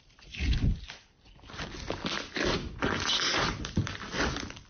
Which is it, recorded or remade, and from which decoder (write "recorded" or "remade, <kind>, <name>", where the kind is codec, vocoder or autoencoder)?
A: recorded